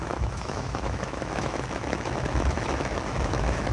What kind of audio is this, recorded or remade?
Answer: remade